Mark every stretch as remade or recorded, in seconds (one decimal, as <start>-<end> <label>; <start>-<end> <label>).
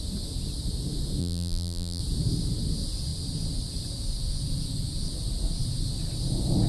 0.0-1.2 recorded; 1.2-2.0 remade; 2.0-6.7 recorded